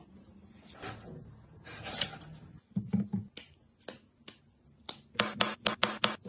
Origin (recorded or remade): recorded